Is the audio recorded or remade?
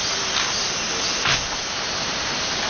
recorded